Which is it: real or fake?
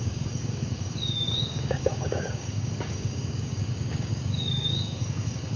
fake